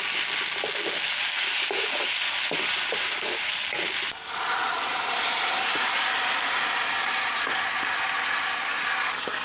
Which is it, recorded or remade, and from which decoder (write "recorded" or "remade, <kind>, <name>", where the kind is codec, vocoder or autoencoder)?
recorded